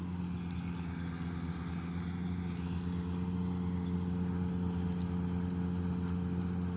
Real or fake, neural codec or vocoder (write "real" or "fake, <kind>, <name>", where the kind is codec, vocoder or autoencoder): real